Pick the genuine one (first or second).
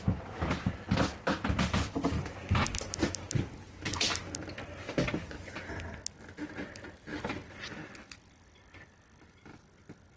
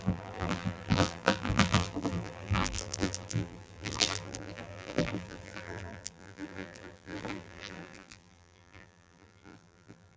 first